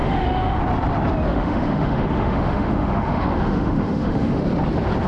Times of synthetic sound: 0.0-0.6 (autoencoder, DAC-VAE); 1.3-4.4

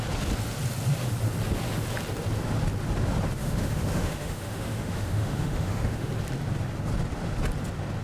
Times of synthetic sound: 3.4-6.1 (autoencoder, DAC-VAE)

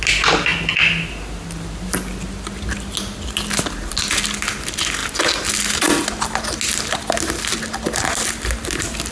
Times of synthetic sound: none

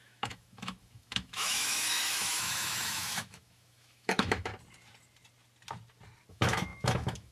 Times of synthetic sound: 0.0-4.5 (autoencoder, DAC-VAE); 6.3-7.3

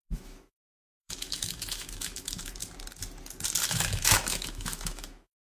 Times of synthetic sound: 0.0-2.6 (autoencoder, DAC-VAE); 3.7-5.4

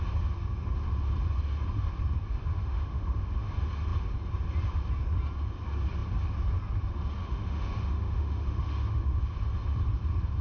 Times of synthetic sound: 2.4-3.5 (autoencoder, DAC-VAE); 7.2-9.2

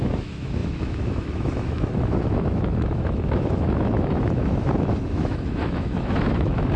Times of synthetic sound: 0.0-6.8 (autoencoder, DAC-VAE)

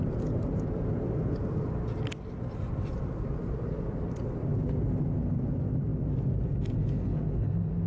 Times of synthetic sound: none